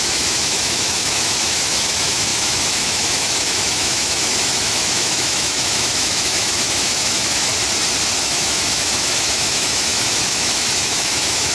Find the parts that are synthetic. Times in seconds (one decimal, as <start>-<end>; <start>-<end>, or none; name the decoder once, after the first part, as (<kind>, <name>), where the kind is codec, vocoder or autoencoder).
0.0-7.5 (autoencoder, DAC-VAE); 8.2-11.5